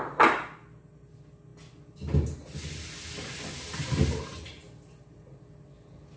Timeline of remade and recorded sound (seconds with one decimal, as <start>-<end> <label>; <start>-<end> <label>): 0.0-6.2 recorded